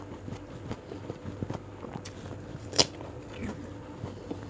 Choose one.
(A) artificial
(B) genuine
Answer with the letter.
B